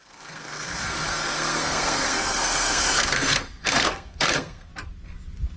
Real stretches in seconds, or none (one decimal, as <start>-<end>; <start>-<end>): 4.7-5.6